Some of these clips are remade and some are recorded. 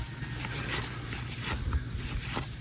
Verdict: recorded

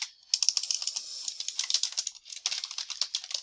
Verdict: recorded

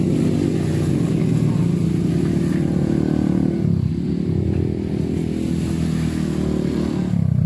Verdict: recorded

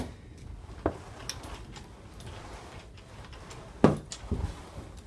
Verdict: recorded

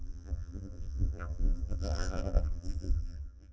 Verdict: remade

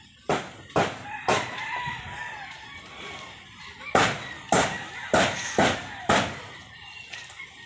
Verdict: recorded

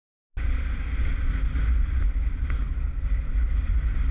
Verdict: recorded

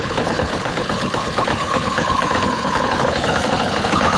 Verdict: remade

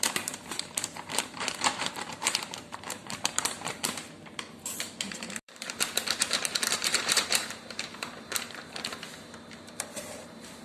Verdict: remade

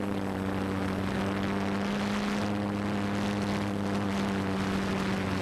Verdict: recorded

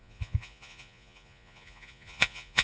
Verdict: remade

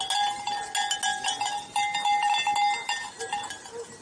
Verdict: recorded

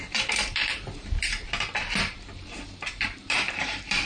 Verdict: remade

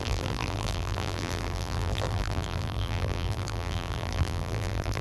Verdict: remade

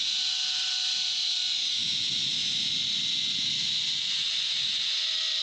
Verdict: recorded